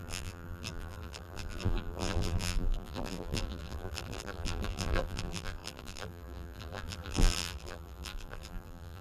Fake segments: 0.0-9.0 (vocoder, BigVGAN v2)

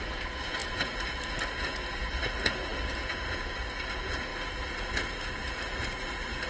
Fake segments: 0.0-6.5 (vocoder, Vocos)

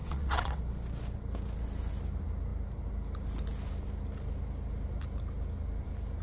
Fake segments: 0.0-0.6 (vocoder, WaveNeXt)

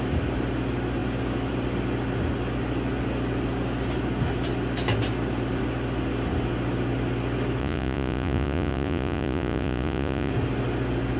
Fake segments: 7.6-10.3 (vocoder, Vocos)